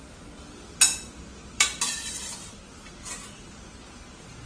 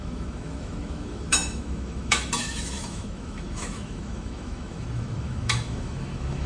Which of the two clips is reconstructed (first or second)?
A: second